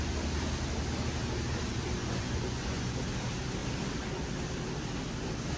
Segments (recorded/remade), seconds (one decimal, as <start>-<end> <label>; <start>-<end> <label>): 0.0-2.0 recorded; 2.0-3.0 remade; 3.0-5.6 recorded